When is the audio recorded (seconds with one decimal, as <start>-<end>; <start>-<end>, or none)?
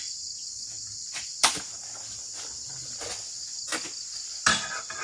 0.0-0.4; 3.4-5.0